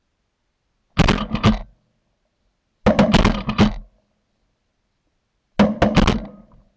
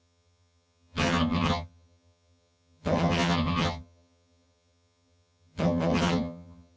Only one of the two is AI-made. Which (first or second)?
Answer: second